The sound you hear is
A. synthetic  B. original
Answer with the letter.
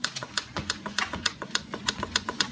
A